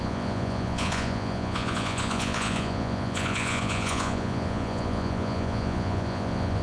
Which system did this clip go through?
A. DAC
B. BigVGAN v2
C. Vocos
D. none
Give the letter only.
C